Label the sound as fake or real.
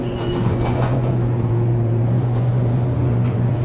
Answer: fake